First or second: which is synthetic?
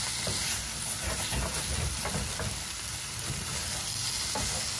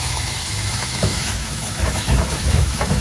second